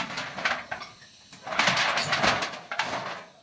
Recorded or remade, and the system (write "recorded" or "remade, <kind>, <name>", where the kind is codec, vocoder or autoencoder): recorded